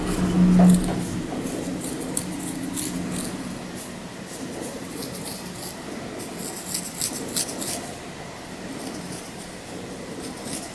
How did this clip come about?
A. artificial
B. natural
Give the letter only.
B